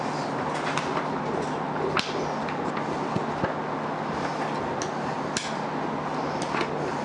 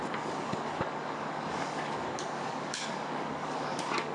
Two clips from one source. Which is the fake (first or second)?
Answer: second